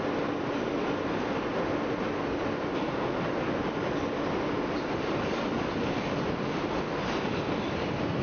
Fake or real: real